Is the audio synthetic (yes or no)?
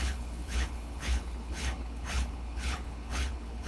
yes